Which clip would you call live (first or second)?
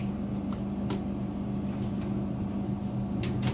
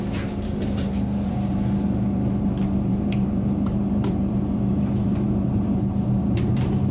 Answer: first